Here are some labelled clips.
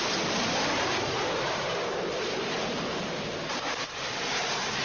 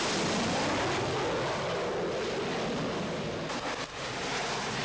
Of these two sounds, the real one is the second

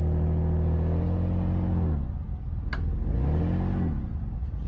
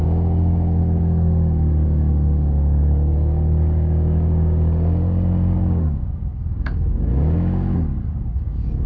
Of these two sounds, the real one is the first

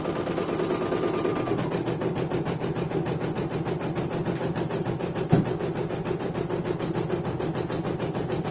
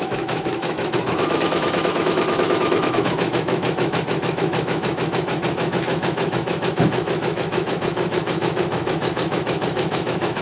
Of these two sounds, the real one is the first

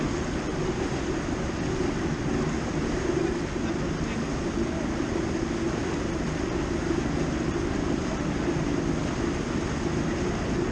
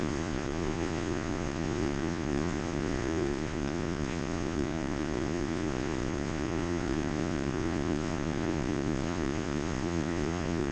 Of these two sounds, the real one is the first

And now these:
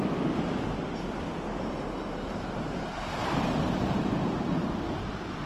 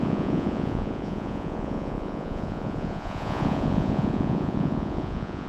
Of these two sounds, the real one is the first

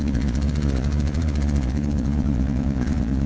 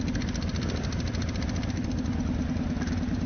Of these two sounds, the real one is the second